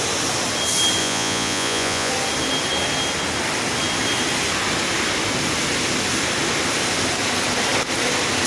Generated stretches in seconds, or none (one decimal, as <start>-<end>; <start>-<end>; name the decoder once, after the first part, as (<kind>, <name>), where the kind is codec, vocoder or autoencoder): 1.0-2.1 (vocoder, Vocos)